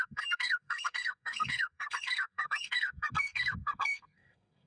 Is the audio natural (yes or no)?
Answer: no